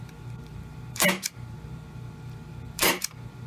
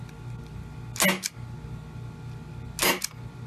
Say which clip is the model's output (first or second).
first